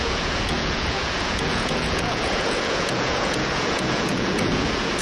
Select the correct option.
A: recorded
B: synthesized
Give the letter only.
B